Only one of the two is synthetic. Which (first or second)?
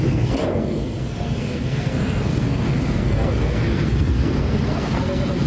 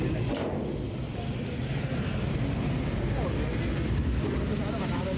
first